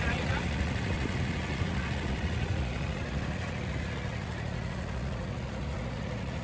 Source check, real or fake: fake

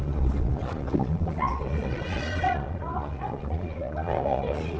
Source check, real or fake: fake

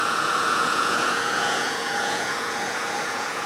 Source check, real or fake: fake